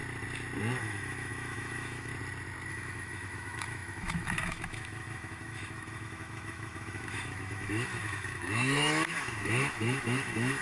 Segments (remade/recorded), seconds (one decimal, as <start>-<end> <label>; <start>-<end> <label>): 0.0-0.8 recorded; 0.8-2.1 remade; 2.1-2.7 recorded; 2.7-10.6 remade